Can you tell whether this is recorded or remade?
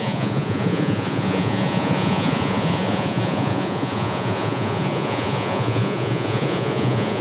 remade